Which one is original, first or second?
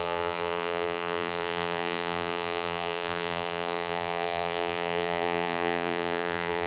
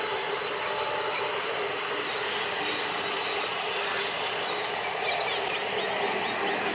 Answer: second